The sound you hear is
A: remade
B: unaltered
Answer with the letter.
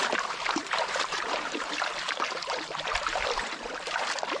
A